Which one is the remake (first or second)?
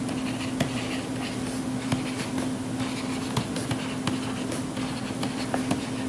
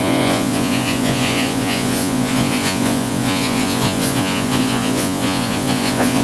second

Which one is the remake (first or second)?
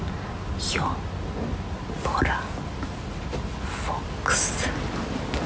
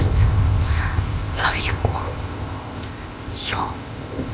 second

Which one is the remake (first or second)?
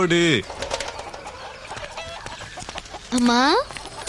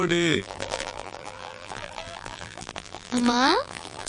second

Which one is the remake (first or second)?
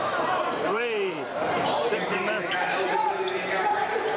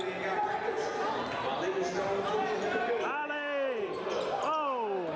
first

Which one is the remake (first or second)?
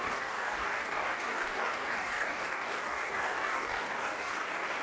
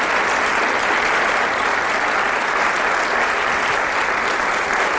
first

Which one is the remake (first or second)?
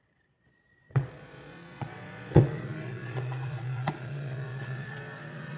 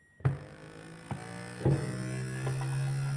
first